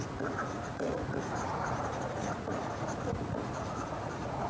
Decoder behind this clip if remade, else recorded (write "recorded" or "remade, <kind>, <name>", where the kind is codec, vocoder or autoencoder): remade, vocoder, Vocos